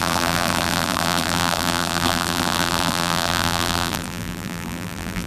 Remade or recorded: remade